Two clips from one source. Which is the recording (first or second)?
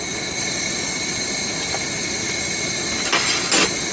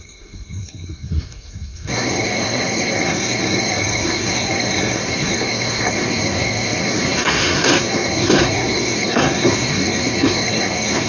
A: first